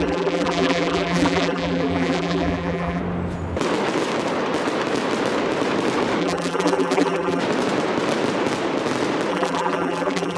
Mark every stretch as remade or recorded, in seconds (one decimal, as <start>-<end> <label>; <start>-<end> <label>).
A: 0.0-3.0 remade; 3.0-6.2 recorded; 6.2-7.4 remade; 7.4-9.3 recorded; 9.3-10.4 remade